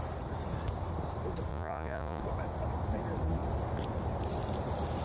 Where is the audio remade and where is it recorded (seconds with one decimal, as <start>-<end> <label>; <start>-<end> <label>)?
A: 0.0-1.5 recorded; 1.5-2.2 remade; 2.2-5.0 recorded